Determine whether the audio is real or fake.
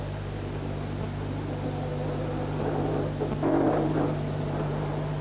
real